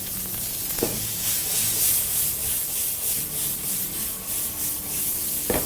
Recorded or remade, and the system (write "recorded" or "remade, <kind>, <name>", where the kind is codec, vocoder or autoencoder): remade, vocoder, Vocos